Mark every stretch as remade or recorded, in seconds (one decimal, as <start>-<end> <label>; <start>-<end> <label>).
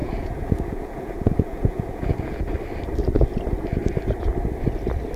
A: 0.0-2.4 remade; 2.4-5.2 recorded